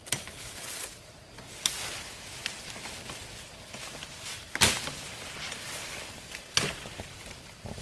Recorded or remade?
recorded